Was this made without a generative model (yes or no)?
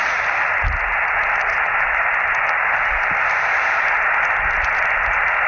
yes